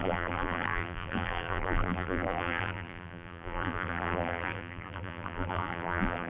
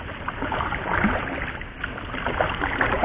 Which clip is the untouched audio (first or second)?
second